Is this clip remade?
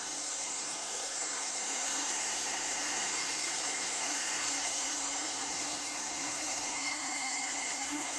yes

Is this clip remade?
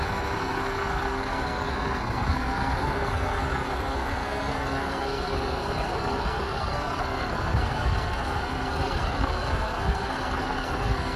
yes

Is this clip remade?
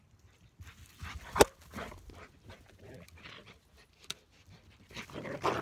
no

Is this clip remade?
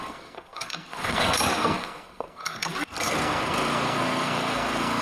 yes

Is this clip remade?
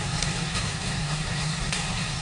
yes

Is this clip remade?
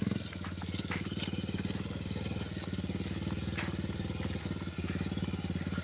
no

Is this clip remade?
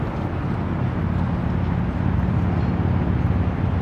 no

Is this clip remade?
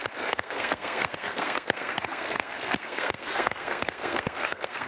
yes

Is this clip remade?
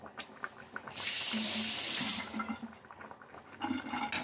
no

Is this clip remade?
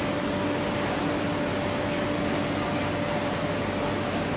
no